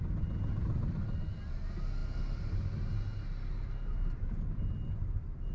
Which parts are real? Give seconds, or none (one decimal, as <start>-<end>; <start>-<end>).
0.0-5.5